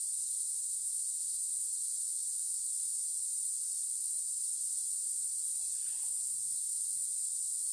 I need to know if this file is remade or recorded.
recorded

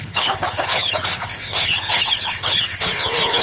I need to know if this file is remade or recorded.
remade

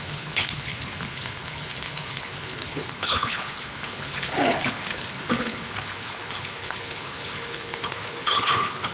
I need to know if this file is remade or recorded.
remade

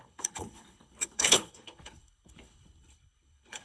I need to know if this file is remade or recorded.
remade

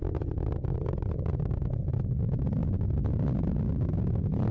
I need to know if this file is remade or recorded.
recorded